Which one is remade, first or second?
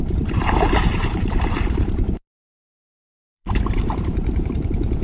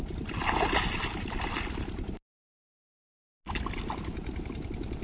first